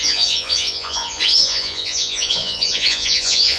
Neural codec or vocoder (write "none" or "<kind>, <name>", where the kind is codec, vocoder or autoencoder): vocoder, Vocos